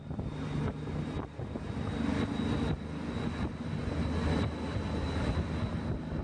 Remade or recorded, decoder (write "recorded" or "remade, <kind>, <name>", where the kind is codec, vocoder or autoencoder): recorded